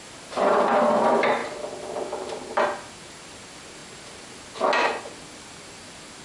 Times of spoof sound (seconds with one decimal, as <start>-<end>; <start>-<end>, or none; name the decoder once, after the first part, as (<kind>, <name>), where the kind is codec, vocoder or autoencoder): none